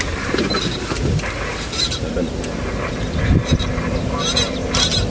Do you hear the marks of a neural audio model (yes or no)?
no